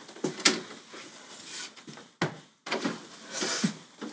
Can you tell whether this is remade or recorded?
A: recorded